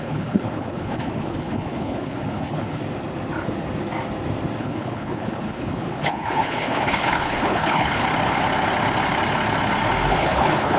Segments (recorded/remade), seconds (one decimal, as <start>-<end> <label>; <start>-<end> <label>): 0.0-2.8 remade; 2.8-4.6 recorded; 4.6-8.0 remade; 8.0-10.1 recorded; 10.1-10.8 remade